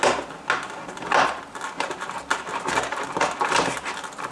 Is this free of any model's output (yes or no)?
yes